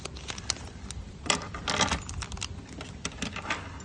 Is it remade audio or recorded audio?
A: recorded